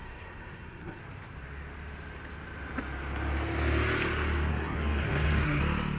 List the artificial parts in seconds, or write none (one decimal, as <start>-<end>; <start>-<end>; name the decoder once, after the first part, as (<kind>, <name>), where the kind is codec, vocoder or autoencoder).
0.0-1.0 (codec, SNAC); 4.5-5.6